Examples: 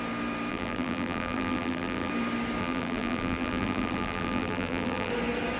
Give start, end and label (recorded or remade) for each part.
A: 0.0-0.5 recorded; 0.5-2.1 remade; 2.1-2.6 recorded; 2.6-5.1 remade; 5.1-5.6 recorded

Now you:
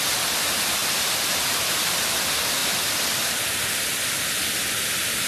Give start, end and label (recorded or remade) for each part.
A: 0.0-0.8 recorded; 0.8-1.4 remade; 1.4-5.3 recorded

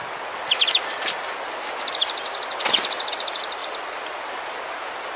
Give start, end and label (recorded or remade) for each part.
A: 0.0-5.2 recorded

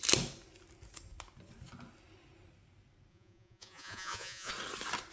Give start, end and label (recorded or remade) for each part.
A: 0.0-3.1 recorded; 3.1-4.5 remade; 4.5-5.1 recorded

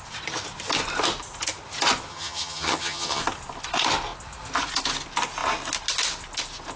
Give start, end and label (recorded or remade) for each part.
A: 0.0-2.1 recorded; 2.1-3.2 remade; 3.2-6.8 recorded

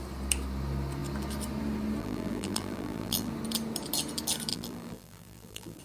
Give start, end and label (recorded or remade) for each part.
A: 0.0-2.0 recorded; 2.0-3.3 remade; 3.3-4.5 recorded; 4.5-5.8 remade